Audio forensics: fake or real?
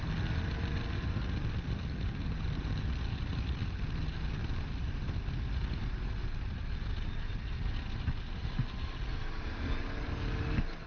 real